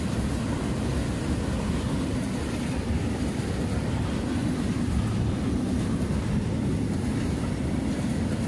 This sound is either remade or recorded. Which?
remade